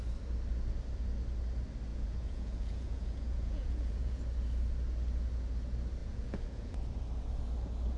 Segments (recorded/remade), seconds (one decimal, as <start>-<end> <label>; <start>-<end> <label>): 0.0-1.9 recorded; 1.9-4.2 remade; 4.2-6.0 recorded; 6.0-6.8 remade; 6.8-8.0 recorded